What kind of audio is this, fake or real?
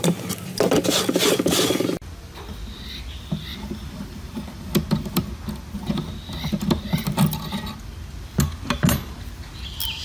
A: real